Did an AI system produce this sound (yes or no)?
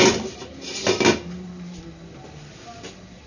no